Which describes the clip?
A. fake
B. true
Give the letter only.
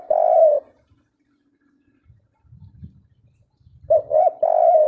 B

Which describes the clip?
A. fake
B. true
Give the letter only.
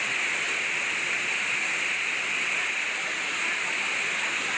B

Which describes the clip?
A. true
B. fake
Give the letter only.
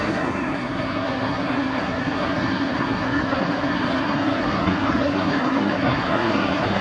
B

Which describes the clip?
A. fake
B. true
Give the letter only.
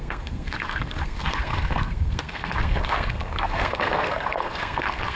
A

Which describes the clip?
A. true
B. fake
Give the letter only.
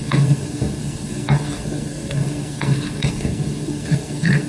B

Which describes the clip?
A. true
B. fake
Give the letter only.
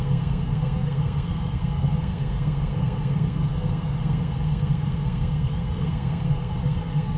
B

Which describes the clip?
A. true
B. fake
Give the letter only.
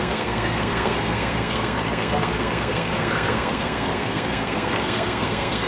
B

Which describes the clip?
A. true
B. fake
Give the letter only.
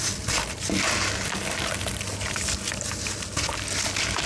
A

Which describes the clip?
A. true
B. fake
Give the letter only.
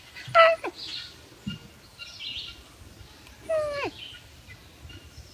A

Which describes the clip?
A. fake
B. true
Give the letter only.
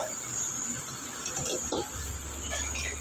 B